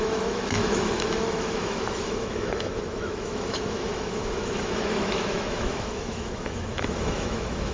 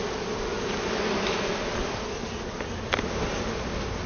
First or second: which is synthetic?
first